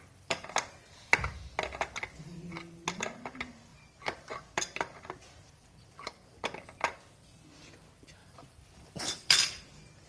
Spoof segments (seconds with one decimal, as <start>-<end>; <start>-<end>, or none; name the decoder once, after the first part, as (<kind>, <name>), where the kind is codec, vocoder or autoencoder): 3.7-5.9 (vocoder, BigVGAN v2); 8.2-9.6